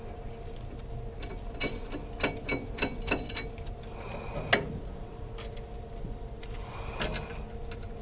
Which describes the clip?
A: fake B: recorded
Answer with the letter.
B